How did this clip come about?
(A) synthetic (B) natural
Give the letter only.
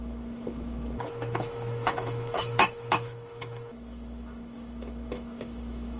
A